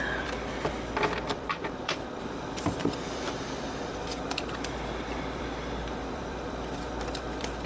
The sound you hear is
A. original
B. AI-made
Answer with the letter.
B